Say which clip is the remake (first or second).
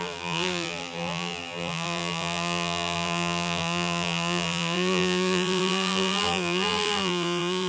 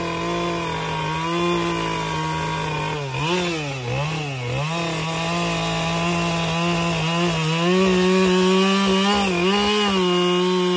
first